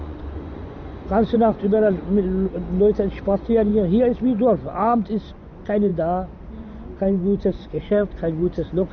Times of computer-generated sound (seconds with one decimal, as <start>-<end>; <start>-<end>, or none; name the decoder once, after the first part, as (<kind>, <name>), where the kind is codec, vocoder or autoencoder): 0.0-2.0 (vocoder, Vocos); 3.2-3.7; 5.3-5.9; 6.6-8.9